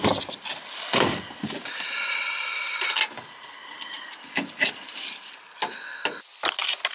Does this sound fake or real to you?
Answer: real